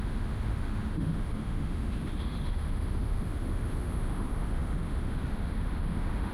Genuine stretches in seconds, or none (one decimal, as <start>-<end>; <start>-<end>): none